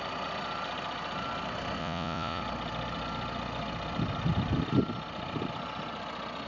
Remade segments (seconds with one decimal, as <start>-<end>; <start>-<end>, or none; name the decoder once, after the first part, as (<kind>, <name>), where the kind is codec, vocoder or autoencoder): 1.8-2.4 (vocoder, Vocos)